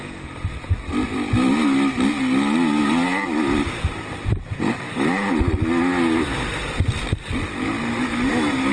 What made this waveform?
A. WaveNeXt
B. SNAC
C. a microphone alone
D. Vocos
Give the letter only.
C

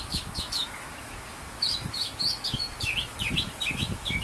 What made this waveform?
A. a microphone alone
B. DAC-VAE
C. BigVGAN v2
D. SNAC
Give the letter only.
B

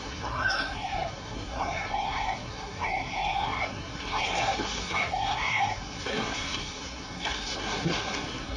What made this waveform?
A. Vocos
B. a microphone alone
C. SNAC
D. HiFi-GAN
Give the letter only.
C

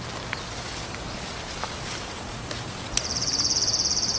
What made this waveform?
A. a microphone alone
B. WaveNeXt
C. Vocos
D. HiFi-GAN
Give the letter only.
A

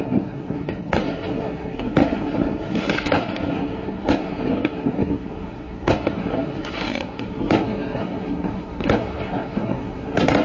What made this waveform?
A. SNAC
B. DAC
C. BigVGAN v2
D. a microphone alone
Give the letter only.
A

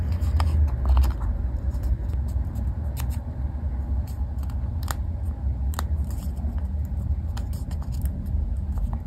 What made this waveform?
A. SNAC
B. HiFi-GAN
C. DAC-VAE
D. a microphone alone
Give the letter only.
D